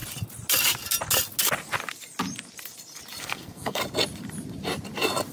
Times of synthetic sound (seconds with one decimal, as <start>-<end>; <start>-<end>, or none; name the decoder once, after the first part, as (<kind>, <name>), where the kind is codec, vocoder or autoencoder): 3.2-3.8 (codec, SNAC)